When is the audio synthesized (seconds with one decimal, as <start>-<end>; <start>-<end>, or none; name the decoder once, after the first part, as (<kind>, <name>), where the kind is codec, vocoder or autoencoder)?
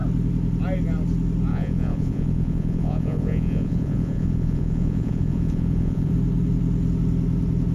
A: 1.5-6.1 (vocoder, Vocos)